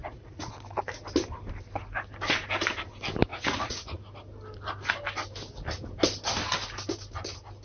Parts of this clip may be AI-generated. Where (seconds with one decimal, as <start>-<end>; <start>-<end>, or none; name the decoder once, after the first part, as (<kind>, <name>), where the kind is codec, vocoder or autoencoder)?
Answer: 0.0-0.5 (vocoder, Vocos); 3.3-3.9